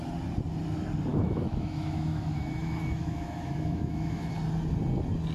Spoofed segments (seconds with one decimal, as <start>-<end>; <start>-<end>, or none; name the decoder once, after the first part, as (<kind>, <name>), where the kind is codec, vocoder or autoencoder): 1.1-4.3 (autoencoder, DAC-VAE)